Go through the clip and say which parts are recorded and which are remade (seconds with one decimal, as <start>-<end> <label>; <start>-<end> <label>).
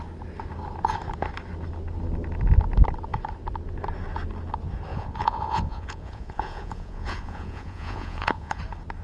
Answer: 0.0-4.9 recorded; 4.9-8.6 remade; 8.6-9.0 recorded